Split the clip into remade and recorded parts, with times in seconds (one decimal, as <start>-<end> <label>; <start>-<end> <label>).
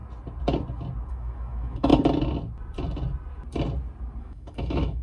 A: 0.0-1.1 recorded; 1.1-1.9 remade; 1.9-4.2 recorded; 4.2-5.0 remade